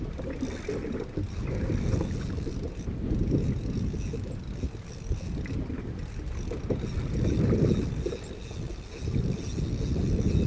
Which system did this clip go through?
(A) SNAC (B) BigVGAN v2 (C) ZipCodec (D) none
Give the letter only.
D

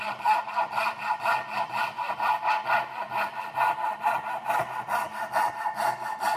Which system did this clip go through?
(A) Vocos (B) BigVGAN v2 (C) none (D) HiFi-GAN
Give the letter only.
C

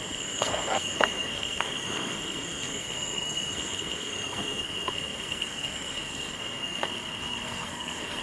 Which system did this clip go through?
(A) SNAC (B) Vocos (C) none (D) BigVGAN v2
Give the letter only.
A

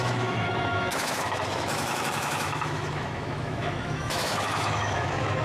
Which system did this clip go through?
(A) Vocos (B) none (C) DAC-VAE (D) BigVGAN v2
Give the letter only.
C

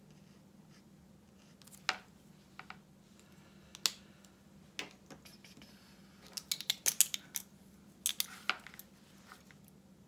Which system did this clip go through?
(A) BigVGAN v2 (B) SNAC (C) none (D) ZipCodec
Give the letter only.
C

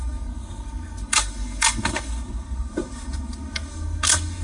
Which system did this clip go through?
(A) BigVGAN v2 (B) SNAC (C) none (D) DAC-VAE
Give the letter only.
B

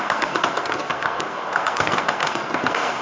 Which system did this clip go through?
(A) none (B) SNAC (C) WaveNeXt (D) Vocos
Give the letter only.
B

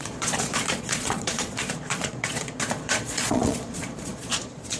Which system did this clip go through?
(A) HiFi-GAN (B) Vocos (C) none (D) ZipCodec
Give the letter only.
B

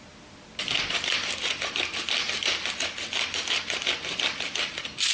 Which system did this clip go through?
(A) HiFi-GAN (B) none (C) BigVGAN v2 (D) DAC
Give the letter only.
B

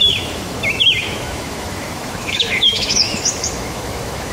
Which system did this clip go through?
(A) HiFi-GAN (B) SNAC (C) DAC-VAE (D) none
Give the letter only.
C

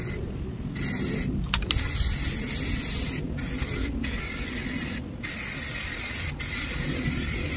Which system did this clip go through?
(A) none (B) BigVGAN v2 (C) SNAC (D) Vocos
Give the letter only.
A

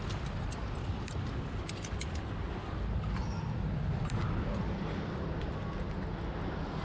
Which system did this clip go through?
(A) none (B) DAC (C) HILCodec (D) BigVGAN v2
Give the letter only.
A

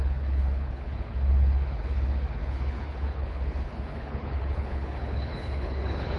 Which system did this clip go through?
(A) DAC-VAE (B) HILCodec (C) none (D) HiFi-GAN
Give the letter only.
B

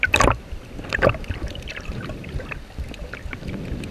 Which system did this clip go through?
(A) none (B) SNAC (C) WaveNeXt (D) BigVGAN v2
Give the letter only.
A